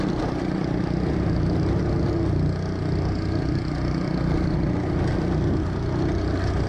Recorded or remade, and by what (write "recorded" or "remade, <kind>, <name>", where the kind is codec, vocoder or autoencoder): recorded